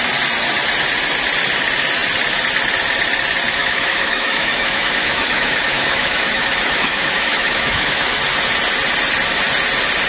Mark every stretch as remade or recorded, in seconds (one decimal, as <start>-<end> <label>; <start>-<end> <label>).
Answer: 0.0-3.6 recorded; 3.6-8.2 remade; 8.2-10.1 recorded